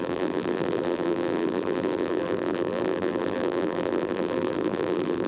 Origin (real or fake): fake